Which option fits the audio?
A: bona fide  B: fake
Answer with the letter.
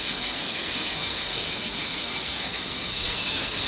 B